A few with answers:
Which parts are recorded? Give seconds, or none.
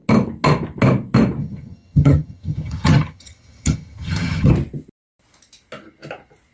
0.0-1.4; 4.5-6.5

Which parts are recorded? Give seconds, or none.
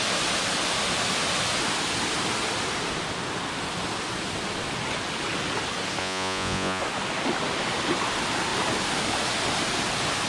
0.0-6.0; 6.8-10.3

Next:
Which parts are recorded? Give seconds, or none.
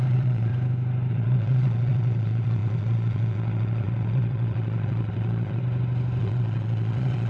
0.5-1.1; 5.6-6.2